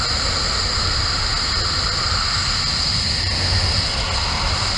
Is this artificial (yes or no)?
no